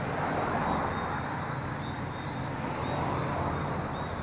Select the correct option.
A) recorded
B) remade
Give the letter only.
A